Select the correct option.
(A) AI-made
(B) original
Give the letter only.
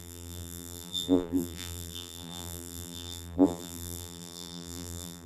A